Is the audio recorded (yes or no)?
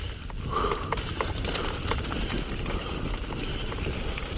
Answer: no